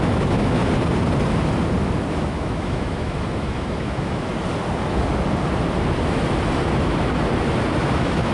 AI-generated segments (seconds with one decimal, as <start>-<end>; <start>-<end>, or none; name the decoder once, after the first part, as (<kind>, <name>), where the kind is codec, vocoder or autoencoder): 0.0-0.6 (autoencoder, DAC-VAE); 2.1-4.3; 7.8-8.3

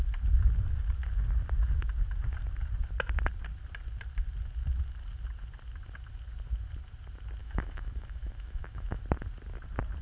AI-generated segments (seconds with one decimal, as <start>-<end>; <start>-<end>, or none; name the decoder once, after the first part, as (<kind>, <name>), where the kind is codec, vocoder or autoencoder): 7.4-9.0 (autoencoder, DAC-VAE)

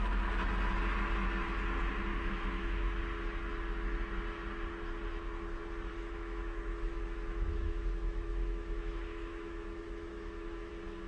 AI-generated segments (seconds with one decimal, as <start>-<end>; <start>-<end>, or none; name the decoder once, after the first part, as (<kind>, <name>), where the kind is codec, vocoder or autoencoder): 2.1-3.0 (autoencoder, DAC-VAE); 5.9-10.7

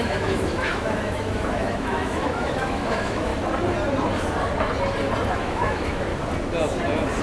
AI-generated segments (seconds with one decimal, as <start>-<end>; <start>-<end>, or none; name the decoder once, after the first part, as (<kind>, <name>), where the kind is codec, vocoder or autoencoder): 0.0-3.3 (autoencoder, DAC-VAE); 5.3-6.1

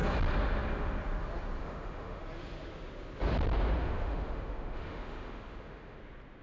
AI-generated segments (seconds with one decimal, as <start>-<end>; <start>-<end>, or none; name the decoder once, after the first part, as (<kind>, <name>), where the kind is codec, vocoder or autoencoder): 1.6-2.2 (autoencoder, DAC-VAE); 3.8-6.0